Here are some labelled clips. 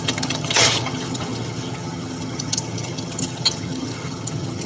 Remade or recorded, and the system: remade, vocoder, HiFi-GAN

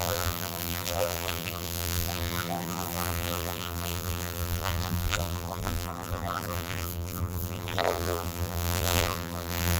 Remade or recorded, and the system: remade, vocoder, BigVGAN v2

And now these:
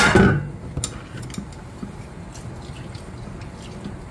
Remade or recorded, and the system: recorded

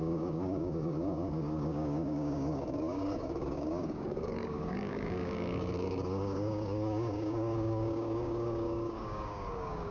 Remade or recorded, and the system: remade, codec, DAC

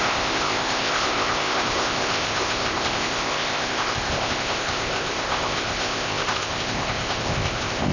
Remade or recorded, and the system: remade, codec, ZipCodec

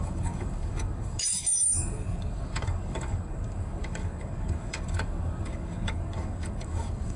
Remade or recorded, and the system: remade, codec, DAC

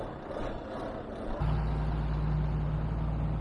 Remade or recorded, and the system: recorded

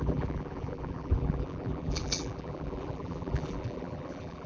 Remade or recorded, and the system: remade, vocoder, BigVGAN v2